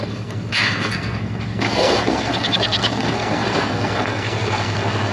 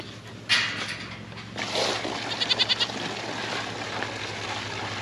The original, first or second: second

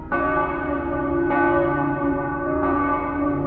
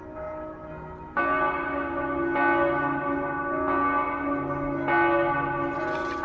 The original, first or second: second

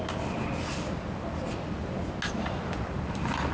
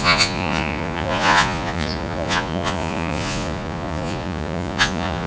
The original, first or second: first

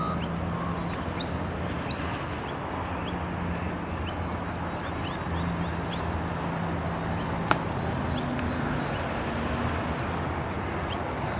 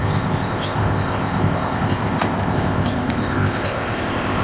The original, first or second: first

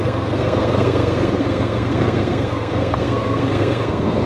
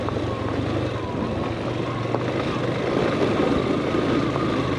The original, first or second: second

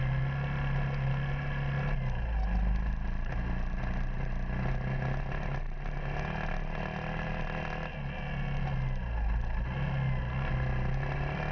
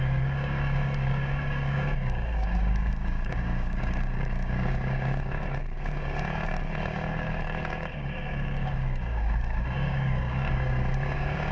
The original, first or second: first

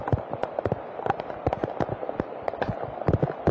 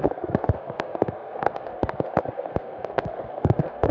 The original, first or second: first